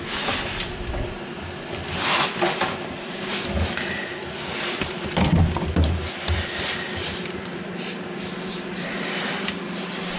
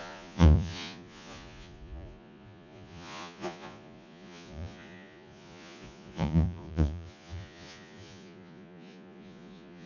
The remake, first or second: second